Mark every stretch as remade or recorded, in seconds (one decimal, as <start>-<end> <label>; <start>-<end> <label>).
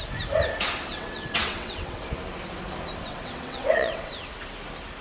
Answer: 0.0-0.9 recorded; 0.9-2.0 remade; 2.0-3.0 recorded; 3.0-4.1 remade; 4.1-5.0 recorded